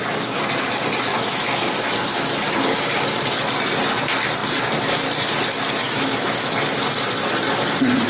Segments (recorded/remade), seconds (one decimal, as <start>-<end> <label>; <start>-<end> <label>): 0.0-1.1 recorded; 1.1-1.7 remade; 1.7-5.8 recorded; 5.8-6.5 remade; 6.5-8.1 recorded